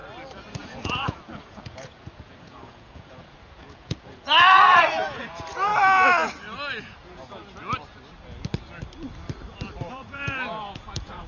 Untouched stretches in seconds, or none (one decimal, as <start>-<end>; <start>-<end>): 0.0-0.6; 5.7-6.8; 7.4-9.8